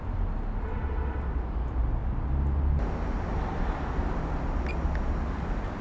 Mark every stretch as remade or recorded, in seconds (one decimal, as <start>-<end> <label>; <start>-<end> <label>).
0.0-5.8 recorded